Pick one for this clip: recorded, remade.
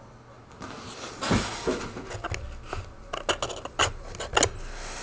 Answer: recorded